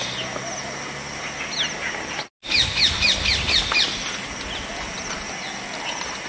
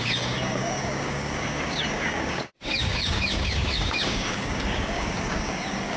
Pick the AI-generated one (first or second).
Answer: second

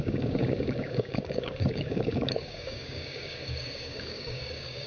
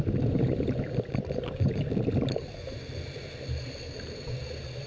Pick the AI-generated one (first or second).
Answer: first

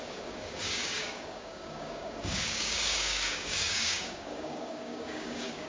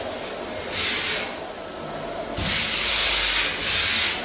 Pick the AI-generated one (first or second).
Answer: first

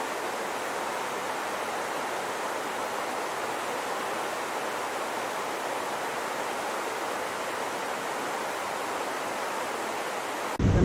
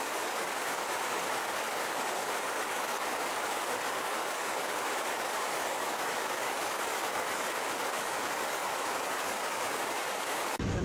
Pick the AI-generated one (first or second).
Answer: second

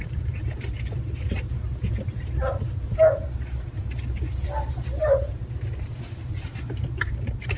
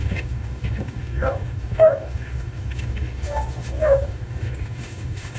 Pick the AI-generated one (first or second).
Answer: second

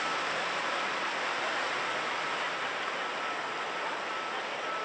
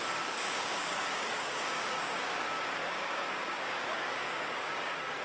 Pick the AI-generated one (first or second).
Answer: second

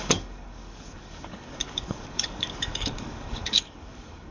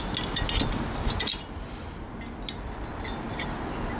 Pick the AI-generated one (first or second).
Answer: first